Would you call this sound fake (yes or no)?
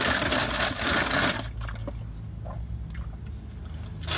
no